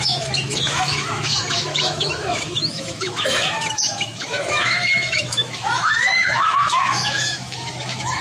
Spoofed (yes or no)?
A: yes